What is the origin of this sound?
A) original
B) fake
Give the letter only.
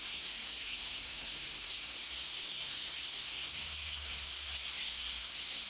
B